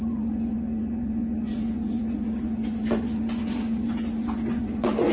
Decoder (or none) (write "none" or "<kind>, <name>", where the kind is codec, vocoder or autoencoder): vocoder, Vocos